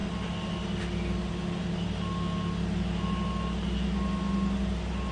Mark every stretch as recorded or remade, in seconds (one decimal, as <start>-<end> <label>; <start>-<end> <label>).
0.0-5.1 recorded